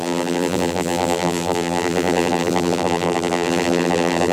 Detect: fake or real fake